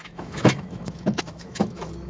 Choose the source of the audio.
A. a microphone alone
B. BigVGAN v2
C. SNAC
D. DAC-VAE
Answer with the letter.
D